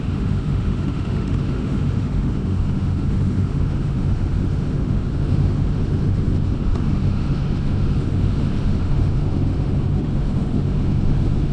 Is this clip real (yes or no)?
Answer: no